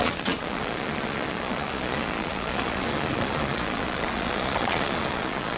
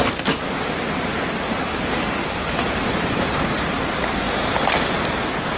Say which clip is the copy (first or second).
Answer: first